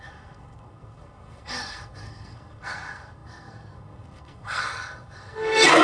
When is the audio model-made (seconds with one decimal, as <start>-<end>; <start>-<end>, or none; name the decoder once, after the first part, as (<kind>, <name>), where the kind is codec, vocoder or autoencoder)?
0.0-5.8 (codec, SNAC)